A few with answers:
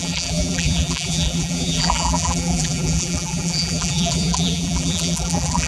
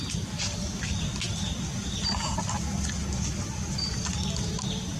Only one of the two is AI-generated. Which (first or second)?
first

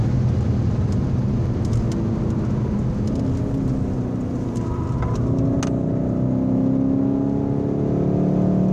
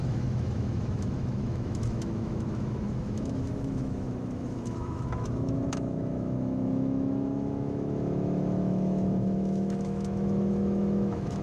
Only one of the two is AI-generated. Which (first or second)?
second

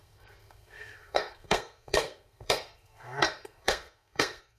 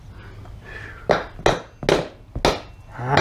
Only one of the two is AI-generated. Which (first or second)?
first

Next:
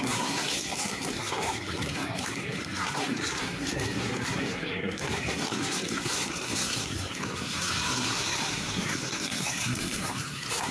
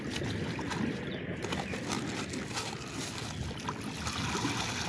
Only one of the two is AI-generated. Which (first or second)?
first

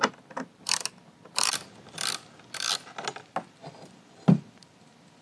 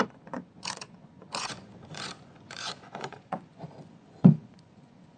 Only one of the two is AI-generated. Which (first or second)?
second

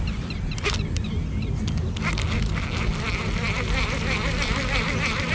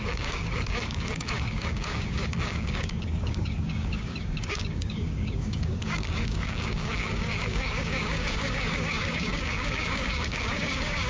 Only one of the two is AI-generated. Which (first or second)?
second